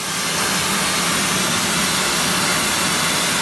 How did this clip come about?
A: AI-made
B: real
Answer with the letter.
B